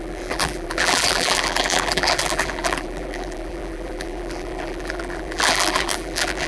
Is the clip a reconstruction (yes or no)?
yes